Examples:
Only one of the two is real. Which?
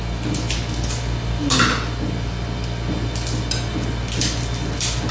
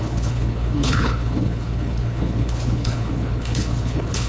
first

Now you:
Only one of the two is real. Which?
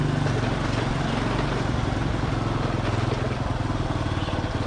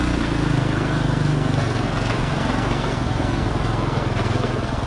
first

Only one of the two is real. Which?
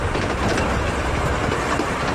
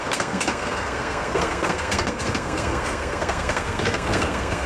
first